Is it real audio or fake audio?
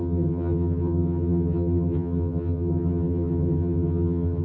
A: fake